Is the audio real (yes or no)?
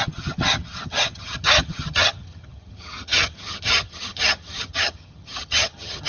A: no